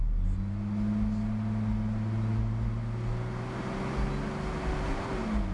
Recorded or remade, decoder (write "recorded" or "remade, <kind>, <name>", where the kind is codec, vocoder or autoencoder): recorded